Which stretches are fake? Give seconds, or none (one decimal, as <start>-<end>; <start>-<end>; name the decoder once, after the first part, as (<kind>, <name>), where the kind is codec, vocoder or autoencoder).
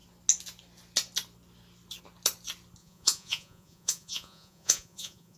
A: 2.8-5.4 (vocoder, Vocos)